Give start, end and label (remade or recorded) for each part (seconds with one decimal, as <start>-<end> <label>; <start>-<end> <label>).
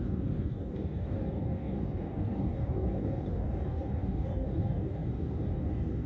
0.0-6.1 remade